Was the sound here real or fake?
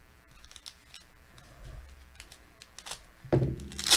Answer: real